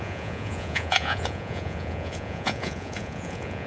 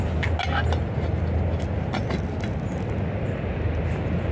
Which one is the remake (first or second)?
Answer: first